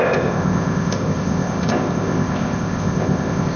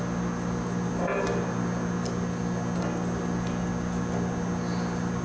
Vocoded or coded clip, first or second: first